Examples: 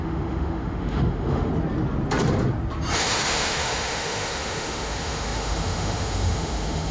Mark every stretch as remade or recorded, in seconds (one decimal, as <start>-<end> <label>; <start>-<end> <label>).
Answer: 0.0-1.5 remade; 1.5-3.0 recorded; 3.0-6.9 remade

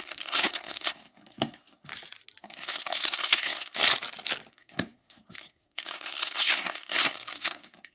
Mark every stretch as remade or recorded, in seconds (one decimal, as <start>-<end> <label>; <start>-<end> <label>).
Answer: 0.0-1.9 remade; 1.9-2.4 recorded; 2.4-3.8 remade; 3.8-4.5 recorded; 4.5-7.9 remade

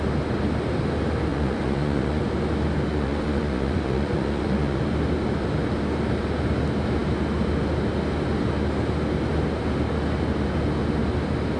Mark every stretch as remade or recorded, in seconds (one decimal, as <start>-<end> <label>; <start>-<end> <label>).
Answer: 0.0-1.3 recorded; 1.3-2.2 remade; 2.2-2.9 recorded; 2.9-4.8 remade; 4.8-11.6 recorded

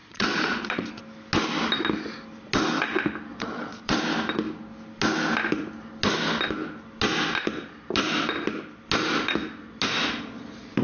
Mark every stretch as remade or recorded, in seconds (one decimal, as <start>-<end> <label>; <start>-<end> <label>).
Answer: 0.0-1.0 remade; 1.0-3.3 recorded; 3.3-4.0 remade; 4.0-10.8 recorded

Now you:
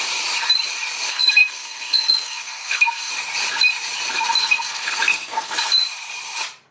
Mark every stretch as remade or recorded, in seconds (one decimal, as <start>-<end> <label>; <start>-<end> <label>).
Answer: 0.0-1.1 recorded; 1.1-3.1 remade; 3.1-4.4 recorded; 4.4-5.7 remade; 5.7-6.7 recorded

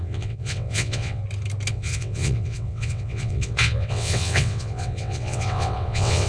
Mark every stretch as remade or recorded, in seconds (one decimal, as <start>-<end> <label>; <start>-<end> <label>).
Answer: 0.0-1.2 remade; 1.2-1.7 recorded; 1.7-6.3 remade